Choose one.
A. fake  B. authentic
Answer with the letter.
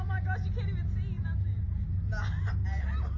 B